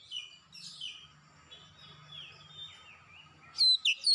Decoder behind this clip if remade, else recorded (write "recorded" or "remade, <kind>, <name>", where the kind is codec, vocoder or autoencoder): recorded